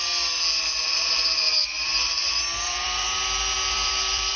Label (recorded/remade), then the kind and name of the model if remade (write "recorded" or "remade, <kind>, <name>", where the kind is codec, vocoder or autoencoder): remade, vocoder, BigVGAN v2